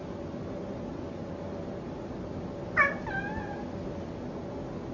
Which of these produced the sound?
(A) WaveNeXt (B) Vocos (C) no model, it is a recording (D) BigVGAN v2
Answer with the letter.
C